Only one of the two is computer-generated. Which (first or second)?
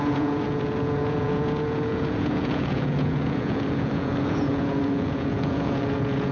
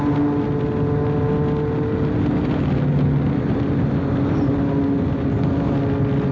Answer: first